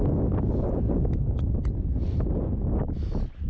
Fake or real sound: real